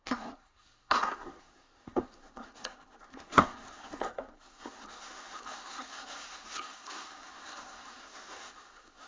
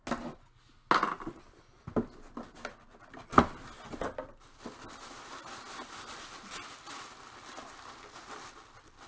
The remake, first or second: first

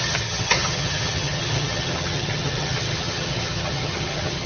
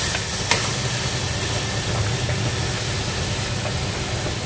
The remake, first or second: first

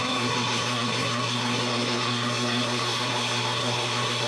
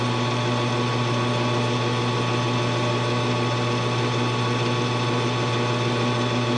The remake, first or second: first